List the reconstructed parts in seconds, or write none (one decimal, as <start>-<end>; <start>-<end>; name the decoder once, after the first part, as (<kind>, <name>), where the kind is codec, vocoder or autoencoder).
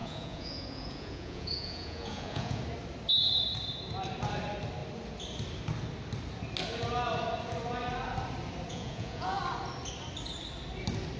0.0-2.6 (vocoder, Vocos); 8.7-9.4